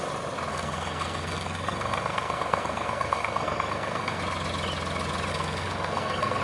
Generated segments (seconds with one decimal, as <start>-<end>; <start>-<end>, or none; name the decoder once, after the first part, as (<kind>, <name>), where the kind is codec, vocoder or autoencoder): 0.5-4.2 (codec, SNAC); 5.3-6.4